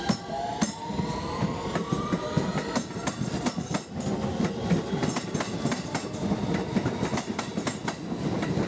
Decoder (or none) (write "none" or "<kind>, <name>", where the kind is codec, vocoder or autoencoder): none